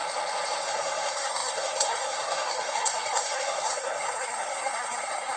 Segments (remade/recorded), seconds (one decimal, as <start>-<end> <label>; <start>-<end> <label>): 0.0-0.6 recorded; 0.6-5.4 remade